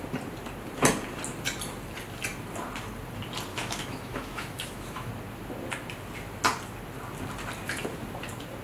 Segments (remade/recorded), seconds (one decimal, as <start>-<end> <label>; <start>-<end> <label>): 0.0-3.5 recorded; 3.5-5.1 remade; 5.1-8.6 recorded